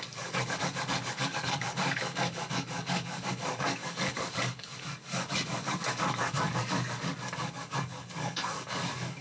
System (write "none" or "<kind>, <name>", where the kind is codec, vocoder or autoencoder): codec, DAC